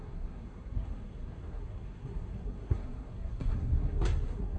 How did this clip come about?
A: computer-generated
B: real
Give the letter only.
A